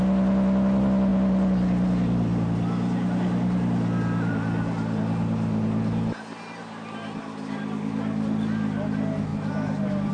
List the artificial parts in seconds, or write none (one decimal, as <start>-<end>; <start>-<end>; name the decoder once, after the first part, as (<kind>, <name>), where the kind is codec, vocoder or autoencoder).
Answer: none